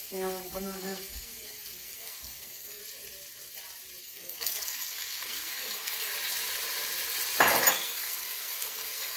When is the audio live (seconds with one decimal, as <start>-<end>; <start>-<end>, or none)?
2.8-4.0; 6.1-7.7